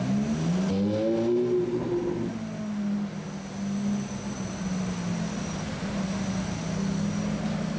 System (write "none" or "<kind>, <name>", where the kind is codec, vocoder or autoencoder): none